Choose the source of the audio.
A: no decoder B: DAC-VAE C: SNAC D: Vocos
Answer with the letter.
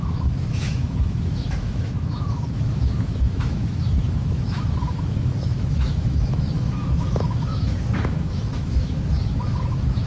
B